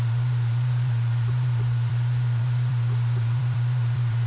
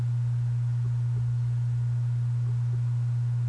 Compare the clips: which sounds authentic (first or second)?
second